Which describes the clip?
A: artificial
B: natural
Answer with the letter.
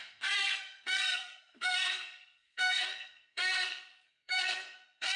A